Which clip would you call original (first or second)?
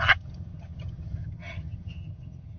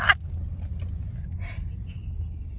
second